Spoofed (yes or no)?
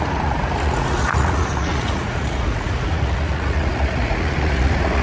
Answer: yes